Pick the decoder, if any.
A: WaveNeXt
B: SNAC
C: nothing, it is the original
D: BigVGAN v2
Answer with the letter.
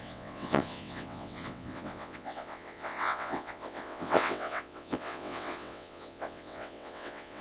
A